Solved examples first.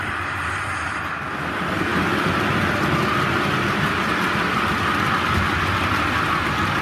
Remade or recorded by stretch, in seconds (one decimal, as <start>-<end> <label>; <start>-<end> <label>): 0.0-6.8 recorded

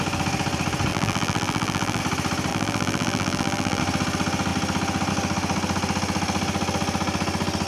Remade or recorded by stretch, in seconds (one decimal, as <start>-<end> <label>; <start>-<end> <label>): 0.0-0.9 recorded; 0.9-2.0 remade; 2.0-2.5 recorded; 2.5-3.8 remade; 3.8-7.7 recorded

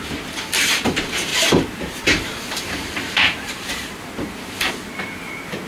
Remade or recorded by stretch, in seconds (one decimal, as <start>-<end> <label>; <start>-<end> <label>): 0.0-1.3 recorded; 1.3-4.7 remade; 4.7-5.7 recorded

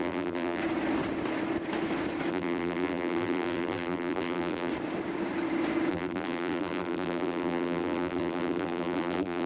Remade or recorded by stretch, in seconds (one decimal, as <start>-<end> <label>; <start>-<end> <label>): 0.0-0.6 remade; 0.6-2.3 recorded; 2.3-4.7 remade; 4.7-5.9 recorded; 5.9-9.5 remade

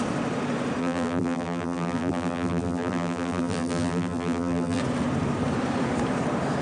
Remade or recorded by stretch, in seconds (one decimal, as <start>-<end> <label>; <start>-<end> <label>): 0.0-0.8 recorded; 0.8-4.8 remade; 4.8-6.6 recorded

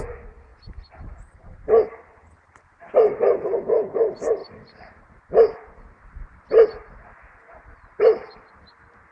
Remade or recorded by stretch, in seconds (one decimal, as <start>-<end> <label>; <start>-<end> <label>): 0.0-9.1 recorded

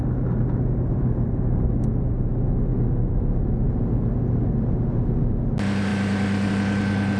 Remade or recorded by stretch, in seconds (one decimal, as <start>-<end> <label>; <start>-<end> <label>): 0.0-7.2 recorded